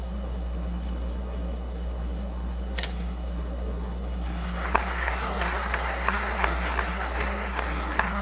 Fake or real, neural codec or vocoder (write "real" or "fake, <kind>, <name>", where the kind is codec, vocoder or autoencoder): fake, codec, SNAC